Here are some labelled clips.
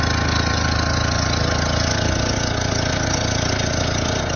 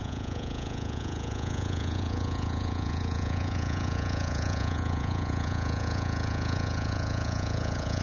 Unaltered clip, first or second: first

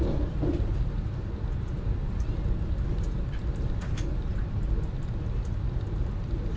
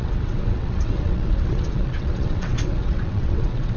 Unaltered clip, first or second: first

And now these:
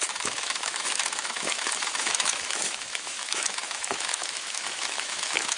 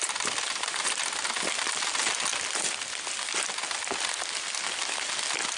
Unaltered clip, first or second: second